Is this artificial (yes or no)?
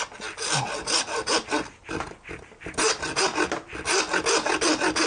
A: no